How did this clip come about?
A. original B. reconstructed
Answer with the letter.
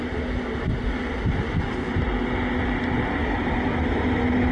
A